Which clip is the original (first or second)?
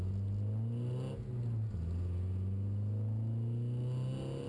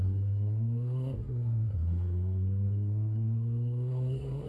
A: first